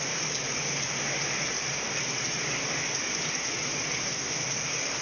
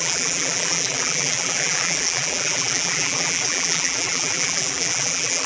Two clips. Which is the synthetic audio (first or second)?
second